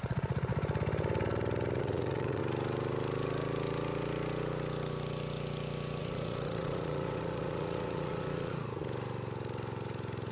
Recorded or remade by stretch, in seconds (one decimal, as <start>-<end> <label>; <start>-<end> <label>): 0.0-0.5 remade; 0.5-1.8 recorded; 1.8-2.4 remade; 2.4-6.0 recorded; 6.0-8.8 remade; 8.8-10.3 recorded